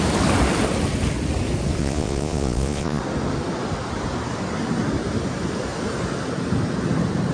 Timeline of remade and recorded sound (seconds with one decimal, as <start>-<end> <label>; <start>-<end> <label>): 0.0-1.8 recorded; 1.8-3.0 remade; 3.0-7.3 recorded